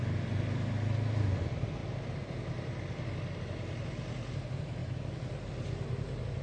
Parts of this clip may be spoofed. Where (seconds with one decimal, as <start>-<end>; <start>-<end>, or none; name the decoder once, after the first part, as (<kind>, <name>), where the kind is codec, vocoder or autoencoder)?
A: none